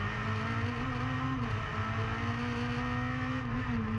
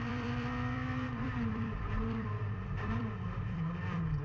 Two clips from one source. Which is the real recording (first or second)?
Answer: first